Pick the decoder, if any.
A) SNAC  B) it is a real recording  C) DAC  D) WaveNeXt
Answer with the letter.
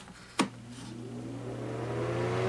B